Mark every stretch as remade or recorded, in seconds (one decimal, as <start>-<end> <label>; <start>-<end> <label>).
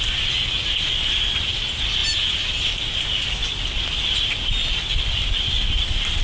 0.0-6.2 recorded